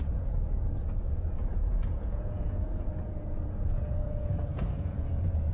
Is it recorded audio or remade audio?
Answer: remade